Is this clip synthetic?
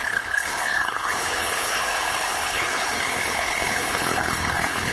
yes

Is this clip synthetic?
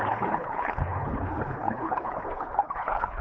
yes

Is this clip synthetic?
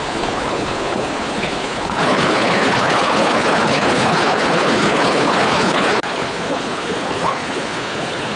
yes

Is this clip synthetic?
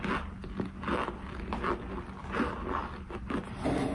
no